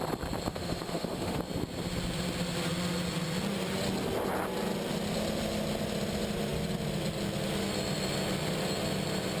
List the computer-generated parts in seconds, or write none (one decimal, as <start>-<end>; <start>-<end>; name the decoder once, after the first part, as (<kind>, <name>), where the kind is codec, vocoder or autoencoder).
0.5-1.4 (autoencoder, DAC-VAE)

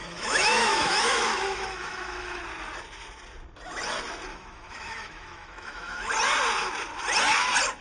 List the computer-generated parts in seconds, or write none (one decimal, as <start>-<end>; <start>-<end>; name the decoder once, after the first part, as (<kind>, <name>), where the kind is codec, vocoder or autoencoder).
0.0-2.4 (autoencoder, DAC-VAE); 4.3-6.1

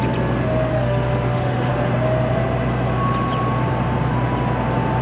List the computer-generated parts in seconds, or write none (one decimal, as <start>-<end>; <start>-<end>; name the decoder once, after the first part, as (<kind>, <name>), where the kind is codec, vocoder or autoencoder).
0.7-1.7 (autoencoder, DAC-VAE)